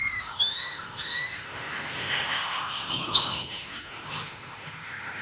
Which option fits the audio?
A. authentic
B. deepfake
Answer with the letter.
B